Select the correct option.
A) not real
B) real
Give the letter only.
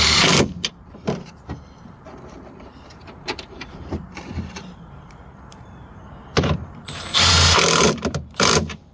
A